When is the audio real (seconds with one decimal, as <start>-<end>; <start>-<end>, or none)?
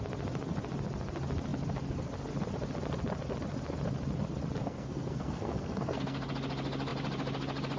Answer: 0.0-4.6; 6.3-7.8